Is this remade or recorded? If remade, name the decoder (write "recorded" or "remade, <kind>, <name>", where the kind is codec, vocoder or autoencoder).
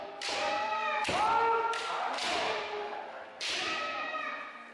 recorded